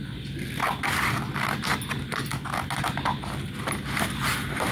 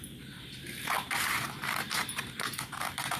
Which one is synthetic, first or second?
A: second